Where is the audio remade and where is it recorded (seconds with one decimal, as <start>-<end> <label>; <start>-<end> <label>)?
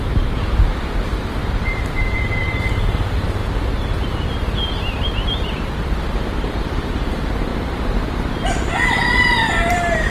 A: 0.0-3.4 remade; 3.4-5.0 recorded; 5.0-10.1 remade